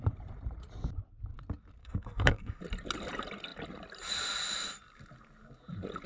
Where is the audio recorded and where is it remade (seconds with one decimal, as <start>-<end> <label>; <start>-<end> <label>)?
0.0-1.8 recorded; 1.8-2.6 remade; 2.6-6.1 recorded